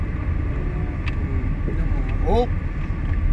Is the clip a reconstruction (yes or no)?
no